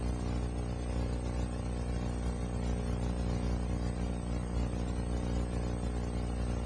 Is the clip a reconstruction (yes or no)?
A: no